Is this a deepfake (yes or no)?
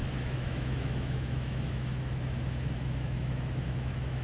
yes